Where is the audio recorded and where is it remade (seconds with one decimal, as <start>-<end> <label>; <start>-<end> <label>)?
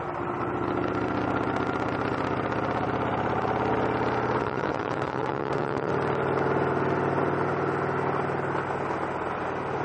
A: 0.0-4.4 recorded; 4.4-5.9 remade; 5.9-9.8 recorded